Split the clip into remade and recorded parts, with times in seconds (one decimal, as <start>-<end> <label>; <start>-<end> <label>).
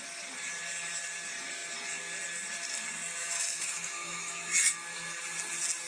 0.0-3.2 recorded; 3.2-5.2 remade; 5.2-5.9 recorded